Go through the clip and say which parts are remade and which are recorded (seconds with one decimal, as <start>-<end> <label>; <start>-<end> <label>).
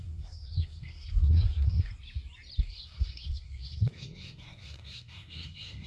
0.0-1.9 remade; 1.9-2.6 recorded; 2.6-5.9 remade